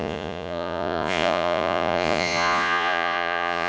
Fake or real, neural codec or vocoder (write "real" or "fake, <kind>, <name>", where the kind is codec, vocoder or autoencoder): fake, vocoder, Vocos